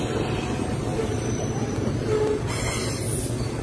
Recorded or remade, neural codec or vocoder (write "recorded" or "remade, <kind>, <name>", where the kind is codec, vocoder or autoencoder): recorded